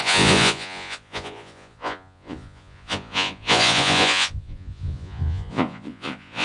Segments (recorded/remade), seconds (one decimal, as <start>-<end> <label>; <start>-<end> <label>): 0.0-6.4 remade